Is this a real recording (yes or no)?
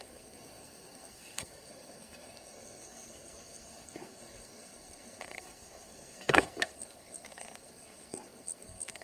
no